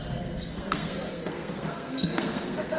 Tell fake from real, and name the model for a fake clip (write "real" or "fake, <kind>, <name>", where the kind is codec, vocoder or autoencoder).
fake, codec, SNAC